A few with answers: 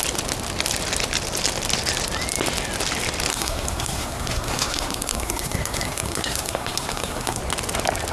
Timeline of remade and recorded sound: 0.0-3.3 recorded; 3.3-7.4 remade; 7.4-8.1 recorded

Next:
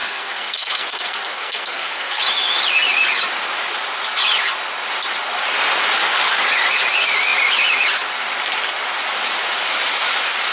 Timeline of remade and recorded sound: 0.0-2.2 remade; 2.2-10.5 recorded